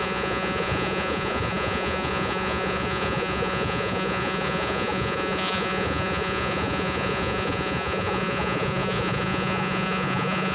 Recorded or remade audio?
remade